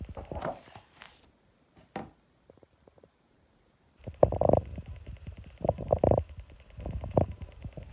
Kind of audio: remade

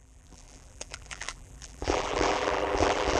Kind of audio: remade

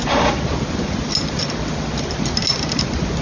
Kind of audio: recorded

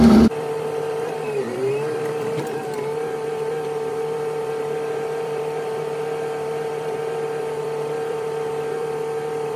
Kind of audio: remade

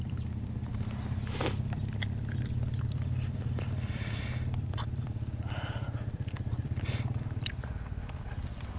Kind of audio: remade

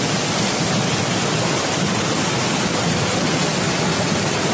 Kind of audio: recorded